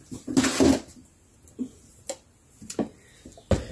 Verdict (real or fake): real